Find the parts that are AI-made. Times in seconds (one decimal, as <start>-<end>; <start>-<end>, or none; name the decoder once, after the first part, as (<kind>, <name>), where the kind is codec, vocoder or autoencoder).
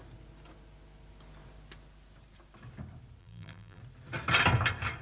3.2-3.8 (vocoder, BigVGAN v2)